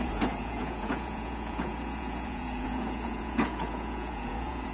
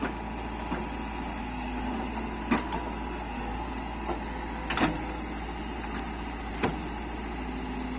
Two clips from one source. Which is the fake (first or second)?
first